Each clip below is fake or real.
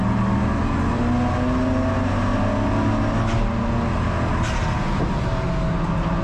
real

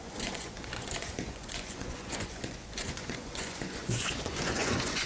fake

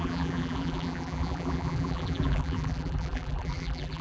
fake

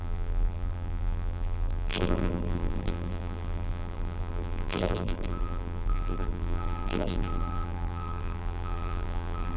fake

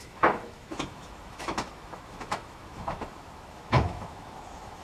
fake